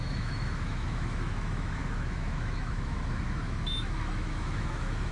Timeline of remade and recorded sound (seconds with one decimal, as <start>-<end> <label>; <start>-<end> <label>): 0.0-5.1 remade